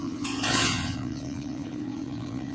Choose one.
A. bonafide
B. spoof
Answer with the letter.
B